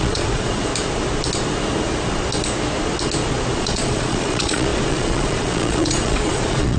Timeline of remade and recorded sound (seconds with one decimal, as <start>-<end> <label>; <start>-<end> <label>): 0.0-0.7 remade; 0.7-3.6 recorded; 3.6-6.8 remade